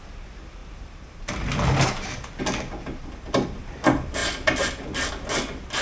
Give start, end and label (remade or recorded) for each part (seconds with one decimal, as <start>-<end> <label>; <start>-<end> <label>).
0.0-0.6 recorded; 0.6-2.4 remade; 2.4-5.8 recorded